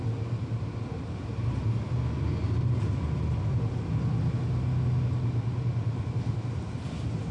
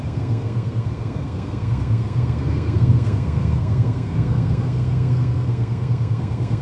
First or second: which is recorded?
first